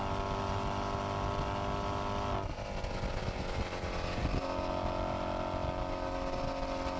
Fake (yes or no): no